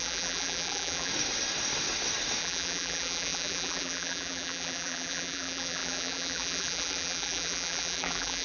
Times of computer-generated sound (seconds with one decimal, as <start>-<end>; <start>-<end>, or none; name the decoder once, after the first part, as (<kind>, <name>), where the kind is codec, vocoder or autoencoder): 0.0-1.1 (vocoder, BigVGAN v2); 2.4-8.4